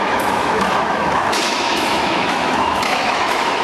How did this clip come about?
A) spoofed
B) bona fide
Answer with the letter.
A